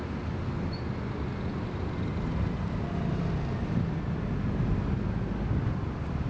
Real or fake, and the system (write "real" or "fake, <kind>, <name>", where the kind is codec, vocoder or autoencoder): real